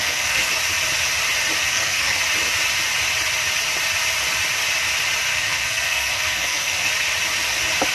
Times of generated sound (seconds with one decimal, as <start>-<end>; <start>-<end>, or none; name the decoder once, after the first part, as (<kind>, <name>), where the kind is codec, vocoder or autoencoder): 0.0-0.5 (codec, SNAC); 1.6-2.2; 5.3-6.9